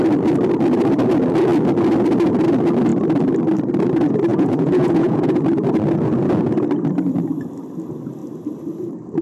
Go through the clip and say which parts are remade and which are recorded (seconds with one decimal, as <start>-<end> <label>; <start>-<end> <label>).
0.0-4.3 recorded; 4.3-5.4 remade; 5.4-9.2 recorded